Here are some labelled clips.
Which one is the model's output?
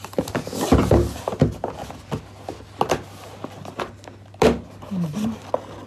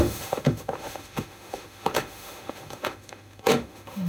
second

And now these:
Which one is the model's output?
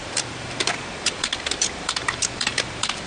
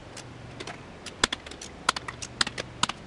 first